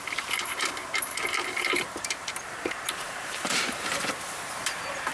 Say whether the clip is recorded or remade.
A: remade